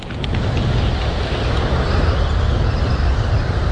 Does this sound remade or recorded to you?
recorded